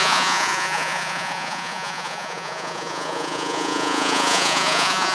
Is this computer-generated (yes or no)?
yes